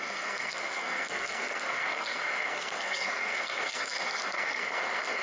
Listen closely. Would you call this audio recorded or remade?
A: remade